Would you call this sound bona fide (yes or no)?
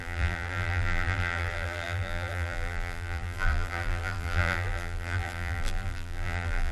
no